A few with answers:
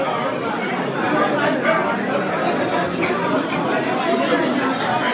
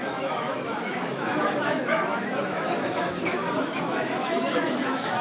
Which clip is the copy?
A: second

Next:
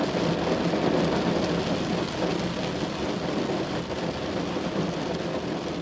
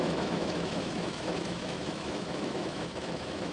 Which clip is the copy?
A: second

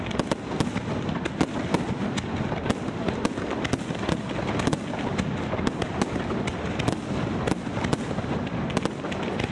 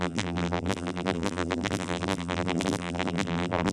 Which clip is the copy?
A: second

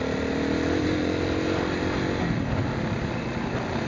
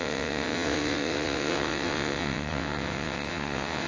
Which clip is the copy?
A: second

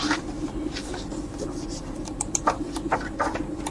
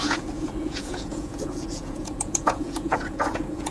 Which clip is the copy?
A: second